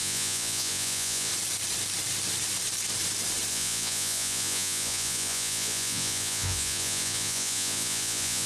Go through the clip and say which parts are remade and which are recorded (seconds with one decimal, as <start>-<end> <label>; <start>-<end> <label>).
0.0-1.3 remade; 1.3-3.5 recorded; 3.5-8.5 remade